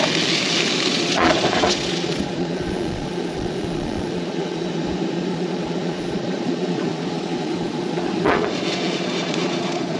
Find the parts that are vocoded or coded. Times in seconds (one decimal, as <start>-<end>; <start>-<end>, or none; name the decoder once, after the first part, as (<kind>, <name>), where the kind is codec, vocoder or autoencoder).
0.9-4.7 (vocoder, Vocos); 5.3-10.0